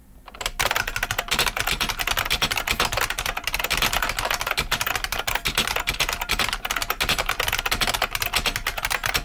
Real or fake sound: real